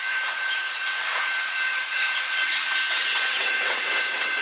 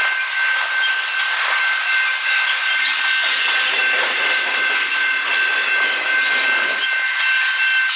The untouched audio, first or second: second